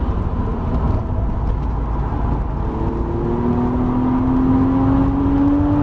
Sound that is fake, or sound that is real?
real